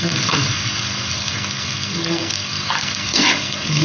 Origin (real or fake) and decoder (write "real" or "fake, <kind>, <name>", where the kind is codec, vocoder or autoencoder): fake, codec, SNAC